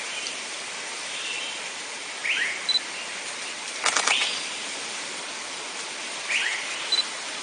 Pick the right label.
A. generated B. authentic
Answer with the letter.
B